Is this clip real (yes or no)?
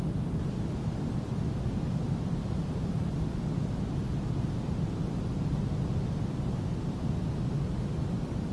yes